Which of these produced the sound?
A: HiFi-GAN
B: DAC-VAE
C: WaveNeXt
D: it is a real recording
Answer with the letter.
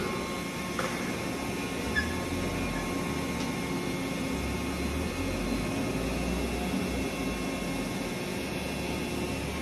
D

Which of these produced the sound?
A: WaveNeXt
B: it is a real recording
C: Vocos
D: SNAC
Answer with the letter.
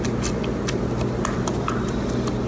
B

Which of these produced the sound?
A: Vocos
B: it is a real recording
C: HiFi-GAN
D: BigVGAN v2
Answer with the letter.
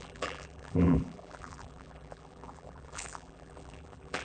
D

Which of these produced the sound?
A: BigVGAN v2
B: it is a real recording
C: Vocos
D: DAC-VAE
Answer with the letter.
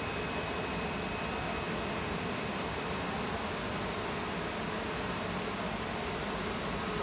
B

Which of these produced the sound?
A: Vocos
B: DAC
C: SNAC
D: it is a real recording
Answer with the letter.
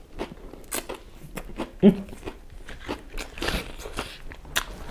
D